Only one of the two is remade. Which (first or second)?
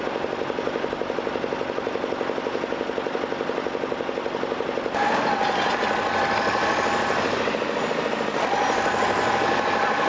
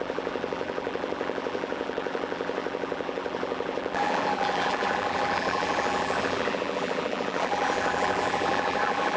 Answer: second